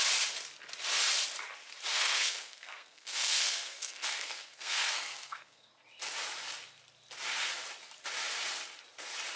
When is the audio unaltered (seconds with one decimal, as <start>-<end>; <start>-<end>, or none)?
0.0-1.9; 5.7-9.4